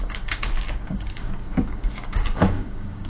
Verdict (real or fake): fake